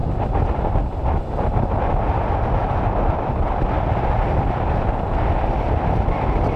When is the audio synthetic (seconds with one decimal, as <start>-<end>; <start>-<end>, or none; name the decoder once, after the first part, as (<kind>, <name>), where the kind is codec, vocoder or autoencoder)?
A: none

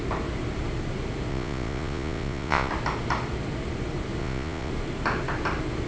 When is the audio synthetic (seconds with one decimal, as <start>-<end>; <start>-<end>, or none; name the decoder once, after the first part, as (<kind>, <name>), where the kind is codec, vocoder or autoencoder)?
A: 1.3-2.7 (vocoder, Vocos); 4.2-4.7

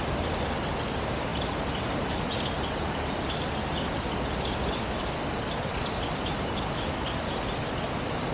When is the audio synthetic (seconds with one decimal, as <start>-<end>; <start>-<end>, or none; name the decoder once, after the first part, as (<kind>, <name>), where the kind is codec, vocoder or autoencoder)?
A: none

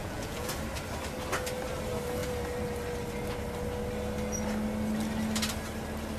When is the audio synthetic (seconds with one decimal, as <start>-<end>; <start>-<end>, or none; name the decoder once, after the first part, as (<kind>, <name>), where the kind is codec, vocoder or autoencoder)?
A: 0.0-0.5 (vocoder, Vocos)

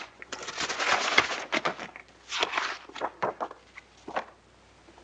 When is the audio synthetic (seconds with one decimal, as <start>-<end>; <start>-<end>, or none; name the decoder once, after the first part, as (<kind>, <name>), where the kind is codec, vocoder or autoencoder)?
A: 0.0-1.7 (vocoder, Vocos)

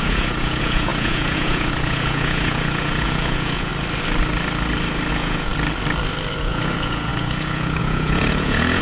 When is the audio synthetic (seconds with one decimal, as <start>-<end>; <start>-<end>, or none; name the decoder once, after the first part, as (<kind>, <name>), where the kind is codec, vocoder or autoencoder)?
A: 0.0-3.7 (vocoder, Vocos); 5.1-5.5; 6.4-8.8